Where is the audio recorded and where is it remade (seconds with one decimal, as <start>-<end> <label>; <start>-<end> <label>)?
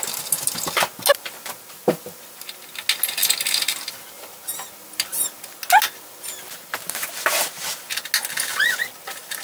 0.0-9.4 recorded